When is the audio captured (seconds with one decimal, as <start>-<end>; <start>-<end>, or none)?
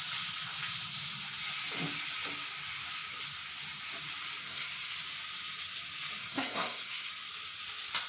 0.0-4.4; 4.9-6.2; 7.1-8.1